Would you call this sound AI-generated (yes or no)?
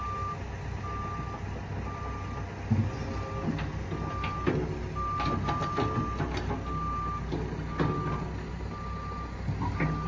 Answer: no